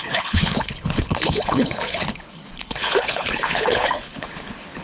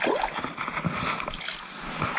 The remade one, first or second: first